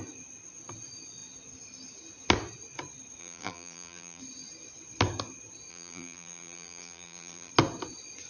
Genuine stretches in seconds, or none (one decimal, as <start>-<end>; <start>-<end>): 0.0-3.2; 4.2-5.7; 7.5-8.3